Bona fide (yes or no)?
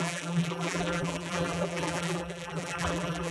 no